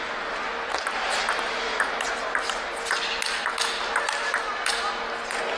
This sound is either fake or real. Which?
real